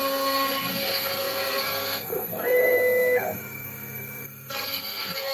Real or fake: fake